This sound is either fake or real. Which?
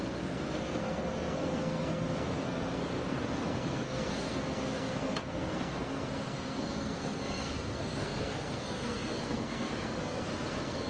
fake